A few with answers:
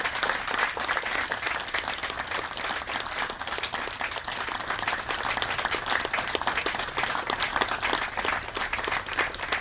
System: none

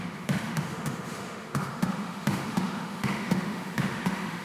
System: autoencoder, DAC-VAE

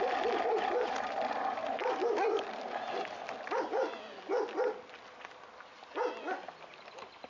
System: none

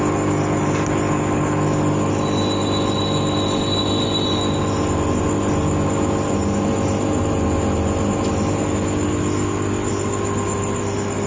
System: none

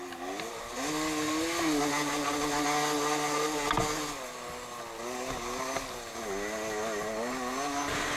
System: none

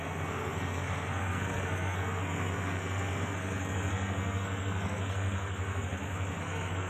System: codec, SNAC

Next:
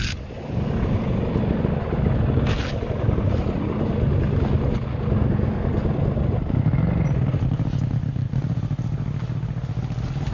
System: none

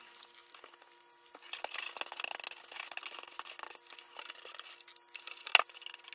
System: none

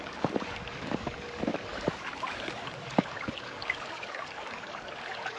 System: codec, DAC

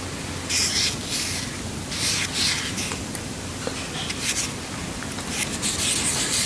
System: none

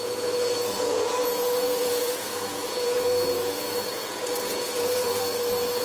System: vocoder, Vocos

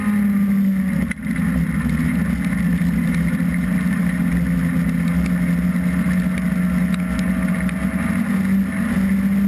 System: none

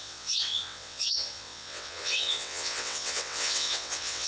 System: vocoder, WaveNeXt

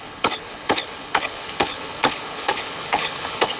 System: codec, HILCodec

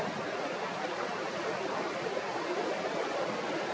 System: none